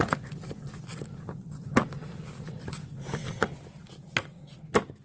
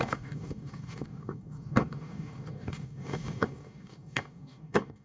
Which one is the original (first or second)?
first